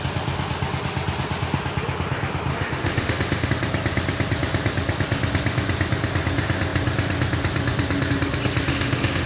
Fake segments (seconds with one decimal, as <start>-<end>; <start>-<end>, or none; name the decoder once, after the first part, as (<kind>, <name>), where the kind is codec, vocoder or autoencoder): 2.5-3.5 (autoencoder, DAC-VAE); 8.7-9.3